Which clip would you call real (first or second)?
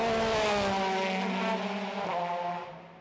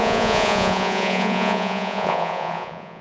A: first